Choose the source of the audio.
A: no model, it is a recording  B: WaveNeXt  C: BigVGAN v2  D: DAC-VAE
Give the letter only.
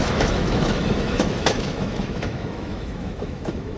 D